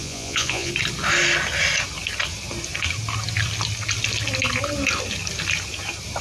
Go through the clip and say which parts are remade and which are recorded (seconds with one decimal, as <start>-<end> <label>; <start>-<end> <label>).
0.0-0.7 remade; 0.7-6.2 recorded

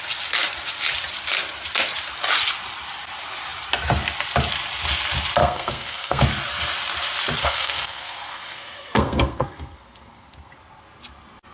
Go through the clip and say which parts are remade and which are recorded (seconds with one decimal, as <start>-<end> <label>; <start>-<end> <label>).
0.0-5.4 recorded; 5.4-6.2 remade; 6.2-7.4 recorded; 7.4-10.5 remade; 10.5-11.5 recorded

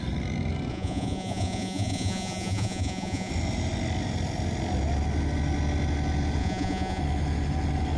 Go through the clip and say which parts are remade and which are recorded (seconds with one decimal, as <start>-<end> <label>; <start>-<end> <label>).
0.0-0.7 recorded; 0.7-3.3 remade; 3.3-6.4 recorded; 6.4-7.0 remade; 7.0-8.0 recorded

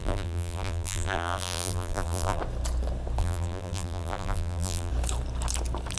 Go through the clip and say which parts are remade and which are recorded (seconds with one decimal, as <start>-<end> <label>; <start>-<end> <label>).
0.0-2.4 remade; 2.4-3.2 recorded; 3.2-4.9 remade; 4.9-6.0 recorded